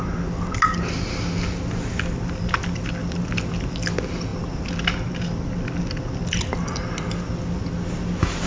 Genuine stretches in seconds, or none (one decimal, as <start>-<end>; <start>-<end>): 0.0-8.5